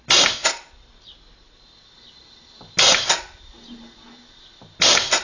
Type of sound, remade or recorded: recorded